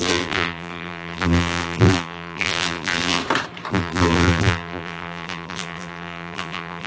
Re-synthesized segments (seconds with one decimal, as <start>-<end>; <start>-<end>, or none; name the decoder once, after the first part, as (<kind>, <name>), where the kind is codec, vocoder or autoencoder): 0.0-3.2 (vocoder, BigVGAN v2); 3.7-6.9